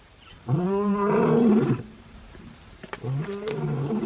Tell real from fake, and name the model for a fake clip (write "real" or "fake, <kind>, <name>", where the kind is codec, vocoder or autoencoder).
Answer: fake, vocoder, BigVGAN v2